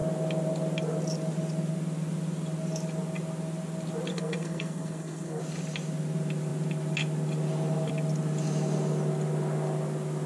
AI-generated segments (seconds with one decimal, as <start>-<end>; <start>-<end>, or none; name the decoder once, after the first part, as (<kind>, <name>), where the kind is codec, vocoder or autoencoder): 4.1-5.4 (codec, SNAC)